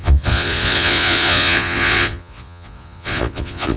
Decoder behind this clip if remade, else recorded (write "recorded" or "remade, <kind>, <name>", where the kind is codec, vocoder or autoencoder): remade, vocoder, Vocos